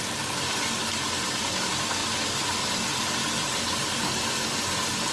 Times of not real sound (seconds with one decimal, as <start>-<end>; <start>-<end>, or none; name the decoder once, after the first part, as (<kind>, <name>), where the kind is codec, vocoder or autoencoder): 2.0-5.1 (vocoder, BigVGAN v2)